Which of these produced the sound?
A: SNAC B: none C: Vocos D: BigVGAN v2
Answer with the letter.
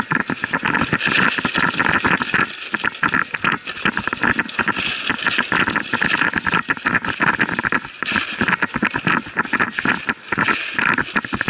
B